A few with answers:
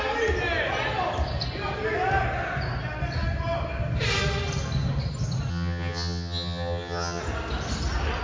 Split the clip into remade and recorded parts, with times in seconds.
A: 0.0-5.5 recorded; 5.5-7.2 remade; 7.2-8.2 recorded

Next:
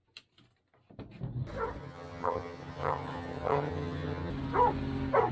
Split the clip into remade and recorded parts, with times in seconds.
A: 0.0-1.8 recorded; 1.8-4.3 remade; 4.3-5.3 recorded

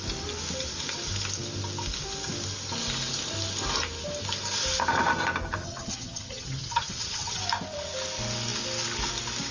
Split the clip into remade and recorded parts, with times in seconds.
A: 0.0-5.6 recorded; 5.6-7.4 remade; 7.4-9.5 recorded

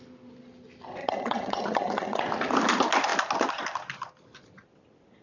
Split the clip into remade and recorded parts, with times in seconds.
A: 0.0-1.0 recorded; 1.0-2.2 remade; 2.2-5.2 recorded